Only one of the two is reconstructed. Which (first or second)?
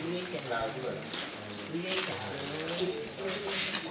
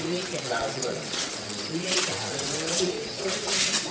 second